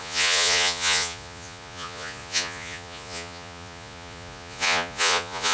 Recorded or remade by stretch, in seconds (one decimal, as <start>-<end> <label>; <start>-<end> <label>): 0.0-5.5 remade